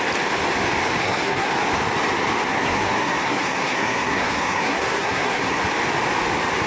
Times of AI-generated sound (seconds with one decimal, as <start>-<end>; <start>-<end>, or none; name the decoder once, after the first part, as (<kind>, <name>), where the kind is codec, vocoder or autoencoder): 1.0-1.5 (codec, SNAC); 2.5-5.6